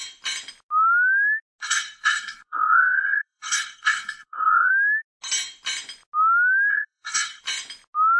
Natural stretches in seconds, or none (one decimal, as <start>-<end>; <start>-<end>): 0.0-1.6; 4.7-6.7; 7.4-8.2